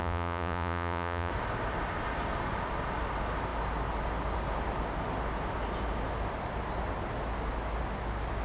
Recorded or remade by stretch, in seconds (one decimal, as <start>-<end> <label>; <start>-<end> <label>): 0.0-1.3 remade; 1.3-8.4 recorded